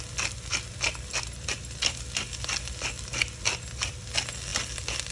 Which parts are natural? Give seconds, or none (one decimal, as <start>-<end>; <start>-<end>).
0.0-5.1